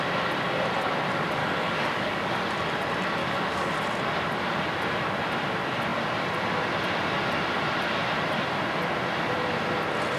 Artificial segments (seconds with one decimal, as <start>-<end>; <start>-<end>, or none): 1.4-2.5; 3.2-3.7